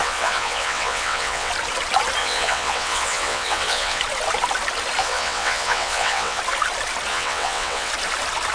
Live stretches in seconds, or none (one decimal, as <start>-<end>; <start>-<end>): 1.5-2.2; 4.0-5.0; 6.4-7.1; 7.9-8.5